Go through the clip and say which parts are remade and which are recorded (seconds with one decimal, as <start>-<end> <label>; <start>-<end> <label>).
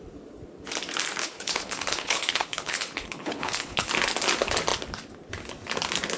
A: 0.0-1.2 recorded; 1.2-3.9 remade; 3.9-6.2 recorded